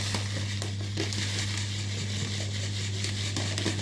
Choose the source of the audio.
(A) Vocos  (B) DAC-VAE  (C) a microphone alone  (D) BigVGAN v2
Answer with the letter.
C